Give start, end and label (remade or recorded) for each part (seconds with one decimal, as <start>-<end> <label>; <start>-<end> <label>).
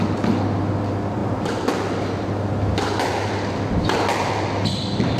0.0-5.2 recorded